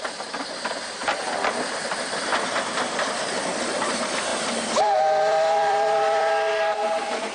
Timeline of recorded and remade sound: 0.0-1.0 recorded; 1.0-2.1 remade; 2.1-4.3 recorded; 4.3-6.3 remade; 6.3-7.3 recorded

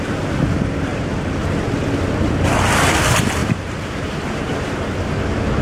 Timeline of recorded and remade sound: 0.0-0.9 recorded; 0.9-1.4 remade; 1.4-3.4 recorded; 3.4-4.4 remade; 4.4-5.6 recorded